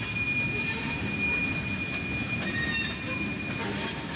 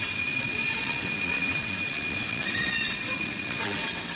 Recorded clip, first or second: first